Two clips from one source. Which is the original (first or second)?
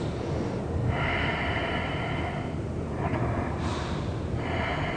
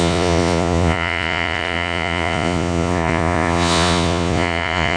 first